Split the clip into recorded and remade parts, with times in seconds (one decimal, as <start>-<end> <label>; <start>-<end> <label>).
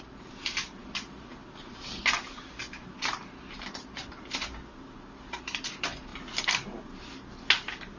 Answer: 0.0-8.0 remade